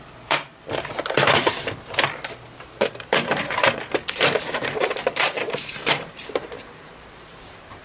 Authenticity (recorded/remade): remade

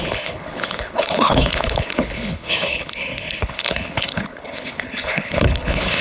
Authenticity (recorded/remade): remade